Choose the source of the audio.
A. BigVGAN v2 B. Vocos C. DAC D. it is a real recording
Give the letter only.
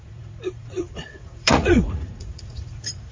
B